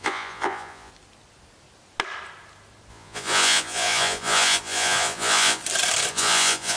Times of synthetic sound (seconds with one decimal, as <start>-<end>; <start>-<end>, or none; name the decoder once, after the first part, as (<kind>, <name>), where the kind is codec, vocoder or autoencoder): 0.0-0.9 (vocoder, Vocos); 2.9-5.6; 6.1-6.8